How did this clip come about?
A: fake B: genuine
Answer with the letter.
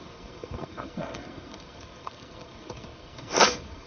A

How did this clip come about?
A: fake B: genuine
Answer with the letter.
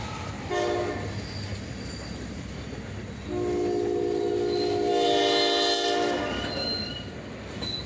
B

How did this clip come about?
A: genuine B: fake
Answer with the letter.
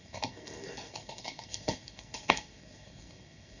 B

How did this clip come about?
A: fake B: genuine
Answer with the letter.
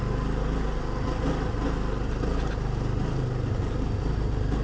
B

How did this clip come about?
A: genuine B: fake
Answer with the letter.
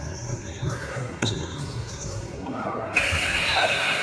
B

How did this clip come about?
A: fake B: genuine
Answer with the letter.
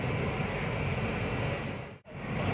B